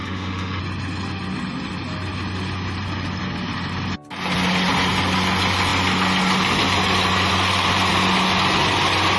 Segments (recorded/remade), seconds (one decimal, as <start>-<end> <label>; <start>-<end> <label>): 0.0-0.6 remade; 0.6-9.2 recorded